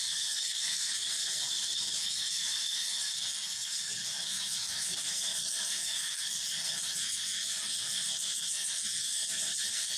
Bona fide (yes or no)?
no